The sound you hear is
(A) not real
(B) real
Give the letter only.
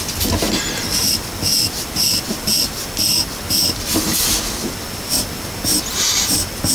B